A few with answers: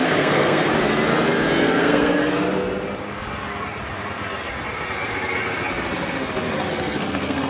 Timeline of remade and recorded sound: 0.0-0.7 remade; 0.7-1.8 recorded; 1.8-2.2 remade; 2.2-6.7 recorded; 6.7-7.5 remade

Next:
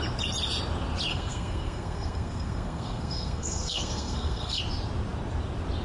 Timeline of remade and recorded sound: 0.0-1.1 recorded; 1.1-4.6 remade; 4.6-5.8 recorded

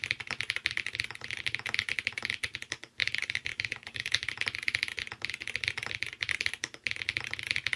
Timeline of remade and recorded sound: 0.0-3.0 recorded; 3.0-4.1 remade; 4.1-7.8 recorded